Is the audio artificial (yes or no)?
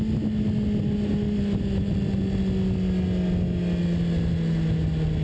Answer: no